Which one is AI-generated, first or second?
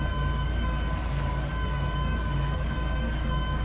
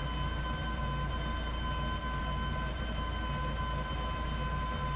first